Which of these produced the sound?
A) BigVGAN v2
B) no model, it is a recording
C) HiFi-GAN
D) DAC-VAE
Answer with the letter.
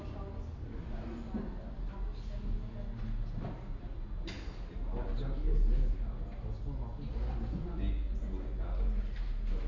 B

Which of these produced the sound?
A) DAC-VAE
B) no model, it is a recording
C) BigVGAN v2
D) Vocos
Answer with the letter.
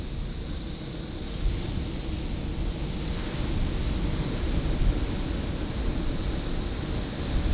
B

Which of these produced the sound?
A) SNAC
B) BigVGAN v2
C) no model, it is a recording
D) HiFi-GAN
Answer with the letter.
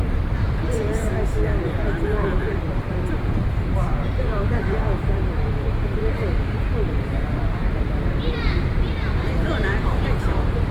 B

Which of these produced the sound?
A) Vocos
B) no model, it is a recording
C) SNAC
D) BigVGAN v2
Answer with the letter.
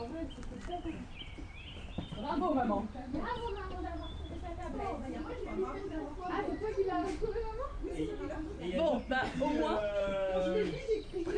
D